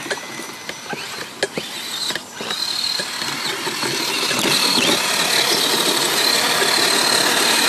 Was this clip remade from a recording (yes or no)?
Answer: no